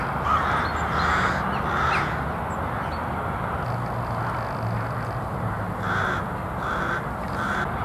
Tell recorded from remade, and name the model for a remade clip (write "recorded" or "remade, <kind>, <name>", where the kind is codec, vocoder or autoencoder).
recorded